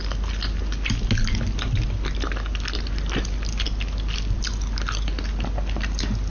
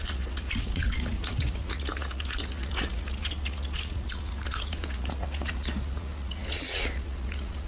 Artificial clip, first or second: second